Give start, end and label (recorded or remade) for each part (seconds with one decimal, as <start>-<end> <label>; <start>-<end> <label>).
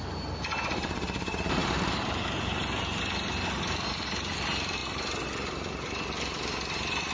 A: 0.0-7.1 recorded